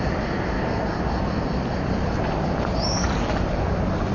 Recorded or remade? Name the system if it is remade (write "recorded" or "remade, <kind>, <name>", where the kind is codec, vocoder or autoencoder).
recorded